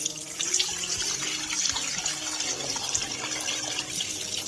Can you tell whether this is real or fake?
real